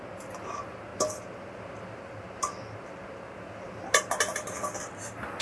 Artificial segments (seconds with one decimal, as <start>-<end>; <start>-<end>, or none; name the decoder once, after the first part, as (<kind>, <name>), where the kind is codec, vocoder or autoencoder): none